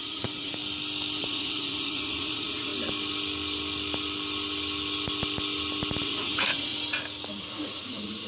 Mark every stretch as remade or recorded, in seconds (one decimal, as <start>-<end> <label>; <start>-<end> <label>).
0.0-0.6 remade; 0.6-1.2 recorded; 1.2-2.7 remade; 2.7-6.0 recorded; 6.0-6.7 remade; 6.7-7.6 recorded; 7.6-8.3 remade

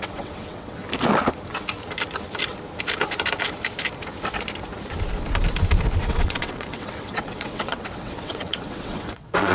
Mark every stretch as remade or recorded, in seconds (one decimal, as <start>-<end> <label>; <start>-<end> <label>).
0.0-0.8 remade; 0.8-6.0 recorded; 6.0-9.5 remade

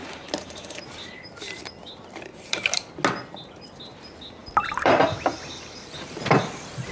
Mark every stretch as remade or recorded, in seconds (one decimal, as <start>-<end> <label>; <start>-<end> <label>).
0.0-0.8 remade; 0.8-2.3 recorded; 2.3-2.9 remade; 2.9-4.4 recorded; 4.4-5.0 remade; 5.0-6.9 recorded

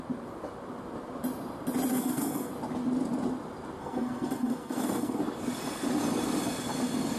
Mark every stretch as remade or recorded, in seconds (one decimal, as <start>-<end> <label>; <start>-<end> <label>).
0.0-1.9 recorded; 1.9-2.5 remade; 2.5-3.8 recorded; 3.8-5.2 remade; 5.2-7.2 recorded

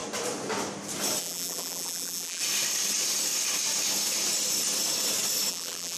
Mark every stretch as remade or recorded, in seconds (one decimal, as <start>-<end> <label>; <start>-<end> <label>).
0.0-1.2 recorded; 1.2-2.4 remade; 2.4-5.5 recorded; 5.5-6.0 remade